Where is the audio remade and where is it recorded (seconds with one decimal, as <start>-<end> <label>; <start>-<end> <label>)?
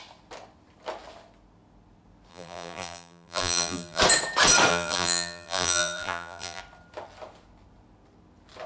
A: 0.0-2.3 recorded; 2.3-4.0 remade; 4.0-4.7 recorded; 4.7-6.6 remade; 6.6-8.7 recorded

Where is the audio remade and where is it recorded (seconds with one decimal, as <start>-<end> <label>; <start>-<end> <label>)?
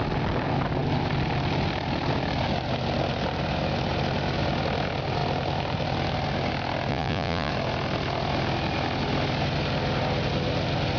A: 0.0-6.9 recorded; 6.9-7.5 remade; 7.5-11.0 recorded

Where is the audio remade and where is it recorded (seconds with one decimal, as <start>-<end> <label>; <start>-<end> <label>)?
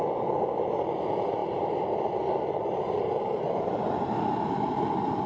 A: 0.0-5.3 recorded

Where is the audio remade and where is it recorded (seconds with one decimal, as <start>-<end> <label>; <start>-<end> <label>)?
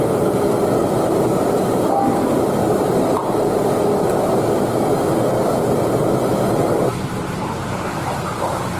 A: 0.0-0.8 recorded; 0.8-1.5 remade; 1.5-2.1 recorded; 2.1-2.6 remade; 2.6-6.9 recorded; 6.9-7.4 remade; 7.4-8.8 recorded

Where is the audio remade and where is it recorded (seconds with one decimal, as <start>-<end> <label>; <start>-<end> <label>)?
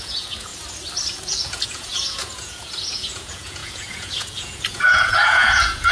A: 0.0-0.5 remade; 0.5-1.2 recorded; 1.2-5.9 remade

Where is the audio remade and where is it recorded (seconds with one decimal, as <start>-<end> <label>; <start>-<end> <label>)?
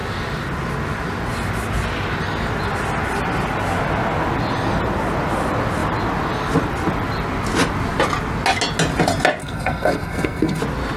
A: 0.0-9.4 recorded; 9.4-10.6 remade; 10.6-11.0 recorded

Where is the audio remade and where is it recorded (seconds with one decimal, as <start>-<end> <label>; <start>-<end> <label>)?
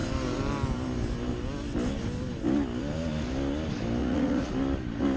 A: 0.0-4.0 recorded; 4.0-4.5 remade; 4.5-5.2 recorded